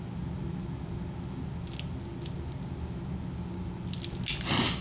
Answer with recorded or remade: recorded